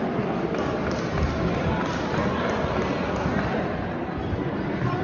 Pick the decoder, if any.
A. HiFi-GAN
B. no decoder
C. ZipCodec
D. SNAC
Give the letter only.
B